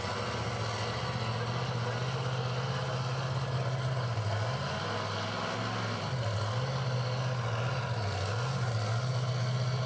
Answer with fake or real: real